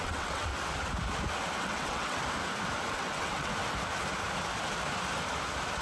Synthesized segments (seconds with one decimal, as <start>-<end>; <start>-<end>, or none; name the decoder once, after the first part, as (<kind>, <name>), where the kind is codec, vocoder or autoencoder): 0.0-0.5 (vocoder, WaveNeXt); 1.6-2.2; 2.9-3.5